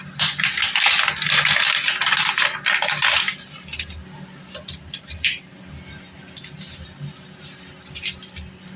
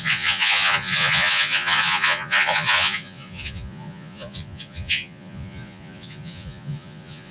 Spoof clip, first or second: second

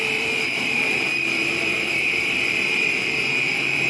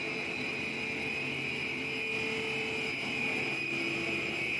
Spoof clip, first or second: first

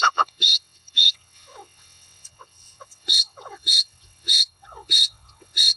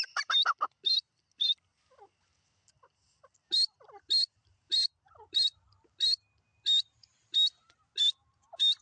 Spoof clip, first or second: first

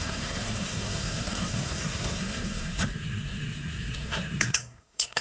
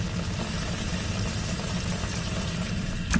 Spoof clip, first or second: first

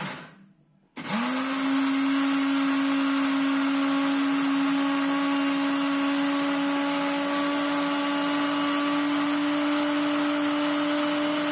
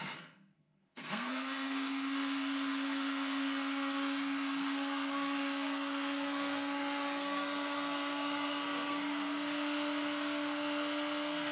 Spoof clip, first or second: second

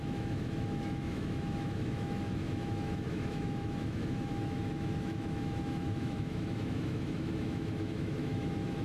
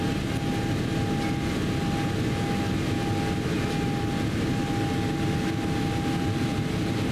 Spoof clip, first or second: first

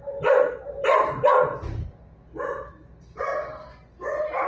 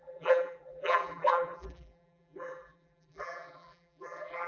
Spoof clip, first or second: second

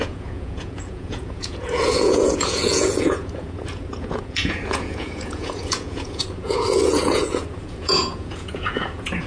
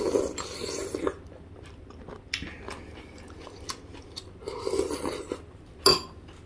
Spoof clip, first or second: first